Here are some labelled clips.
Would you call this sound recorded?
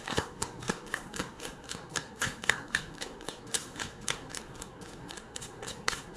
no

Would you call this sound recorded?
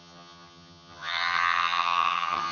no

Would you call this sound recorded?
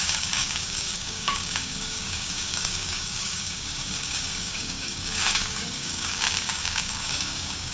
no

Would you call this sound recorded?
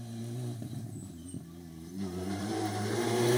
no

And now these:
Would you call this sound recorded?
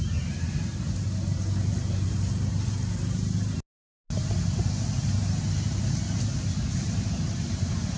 yes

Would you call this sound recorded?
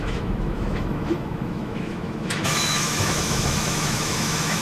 no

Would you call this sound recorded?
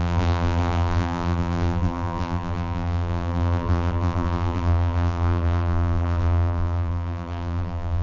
no